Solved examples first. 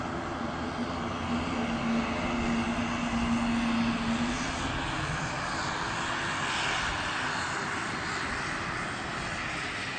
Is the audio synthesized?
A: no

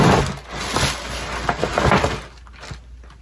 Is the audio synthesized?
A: no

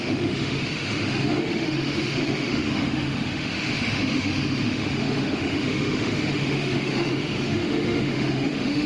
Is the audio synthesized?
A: yes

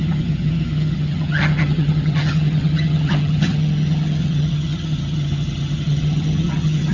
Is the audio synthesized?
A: yes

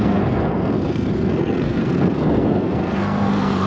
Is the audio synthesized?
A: yes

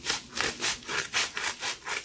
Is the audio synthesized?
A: no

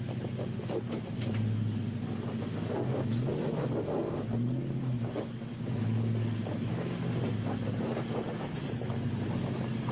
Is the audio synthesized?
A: no